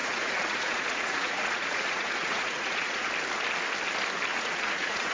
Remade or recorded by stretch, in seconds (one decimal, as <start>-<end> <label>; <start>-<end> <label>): 0.0-3.1 remade; 3.1-4.3 recorded; 4.3-5.1 remade

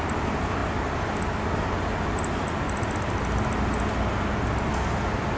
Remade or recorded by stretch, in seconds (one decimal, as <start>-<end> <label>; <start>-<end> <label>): 0.0-5.4 recorded

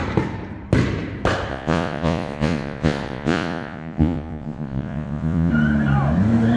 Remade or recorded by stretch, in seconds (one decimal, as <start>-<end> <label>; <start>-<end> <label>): 0.0-1.5 recorded; 1.5-5.5 remade; 5.5-6.6 recorded

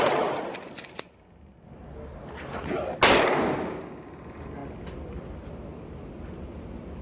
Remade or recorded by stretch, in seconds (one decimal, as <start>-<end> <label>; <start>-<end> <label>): 0.0-7.0 recorded

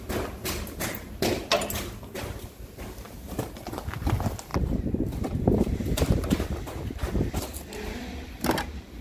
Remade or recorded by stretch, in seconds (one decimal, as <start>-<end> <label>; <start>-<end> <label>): 0.0-9.0 recorded

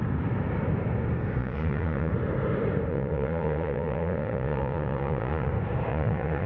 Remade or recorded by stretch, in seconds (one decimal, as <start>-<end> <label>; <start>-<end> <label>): 0.0-1.4 recorded; 1.4-2.1 remade; 2.1-2.9 recorded; 2.9-5.5 remade; 5.5-5.9 recorded; 5.9-6.5 remade